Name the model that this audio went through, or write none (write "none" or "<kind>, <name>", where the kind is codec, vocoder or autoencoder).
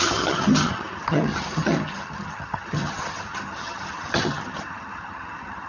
vocoder, HiFi-GAN